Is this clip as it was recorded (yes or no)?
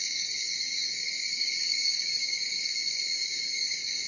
no